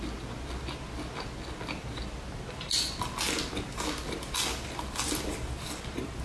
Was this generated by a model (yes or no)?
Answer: no